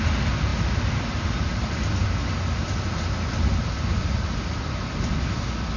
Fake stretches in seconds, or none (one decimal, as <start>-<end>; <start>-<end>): none